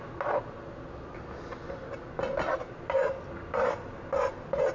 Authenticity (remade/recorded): recorded